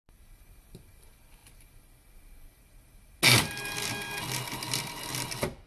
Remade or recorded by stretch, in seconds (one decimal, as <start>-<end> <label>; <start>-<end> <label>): 0.0-5.7 recorded